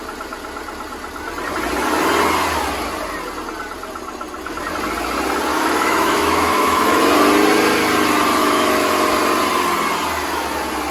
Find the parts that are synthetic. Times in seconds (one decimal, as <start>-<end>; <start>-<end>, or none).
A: 5.5-7.0; 8.4-8.9